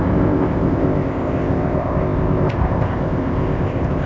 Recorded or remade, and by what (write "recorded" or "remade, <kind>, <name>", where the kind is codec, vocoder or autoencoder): remade, codec, ZipCodec